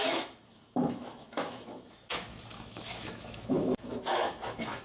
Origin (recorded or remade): remade